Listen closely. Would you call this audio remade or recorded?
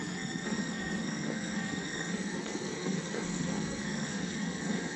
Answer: remade